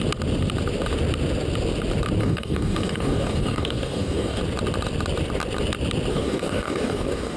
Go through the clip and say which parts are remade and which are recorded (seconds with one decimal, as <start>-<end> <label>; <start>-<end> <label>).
0.0-2.2 recorded; 2.2-4.4 remade; 4.4-6.1 recorded; 6.1-7.4 remade